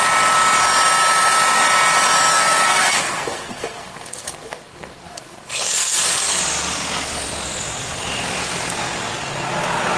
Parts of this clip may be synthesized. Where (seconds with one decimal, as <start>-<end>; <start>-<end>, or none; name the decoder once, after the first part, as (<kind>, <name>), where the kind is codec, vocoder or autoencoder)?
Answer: 2.3-6.4 (codec, SNAC)